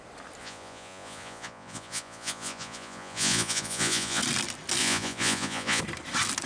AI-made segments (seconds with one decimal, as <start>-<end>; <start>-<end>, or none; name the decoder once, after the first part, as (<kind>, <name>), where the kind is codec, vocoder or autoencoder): 0.4-4.2 (vocoder, Vocos); 4.8-5.8